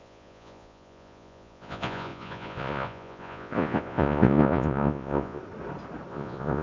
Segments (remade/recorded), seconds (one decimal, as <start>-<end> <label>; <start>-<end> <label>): 0.0-5.4 remade; 5.4-6.1 recorded; 6.1-6.6 remade

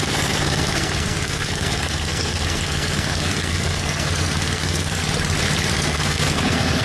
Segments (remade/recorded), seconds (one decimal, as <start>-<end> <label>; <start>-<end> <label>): 0.0-5.0 remade; 5.0-5.7 recorded; 5.7-6.8 remade

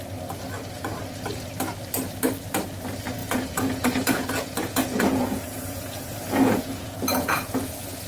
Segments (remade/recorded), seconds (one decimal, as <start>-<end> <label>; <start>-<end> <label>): 0.0-3.2 recorded; 3.2-8.1 remade

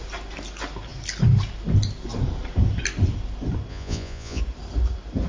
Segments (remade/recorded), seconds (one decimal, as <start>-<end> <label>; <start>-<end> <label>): 0.0-3.7 recorded; 3.7-4.4 remade; 4.4-5.3 recorded

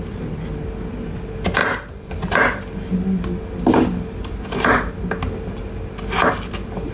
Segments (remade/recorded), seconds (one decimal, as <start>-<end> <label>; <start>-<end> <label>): 0.0-6.9 recorded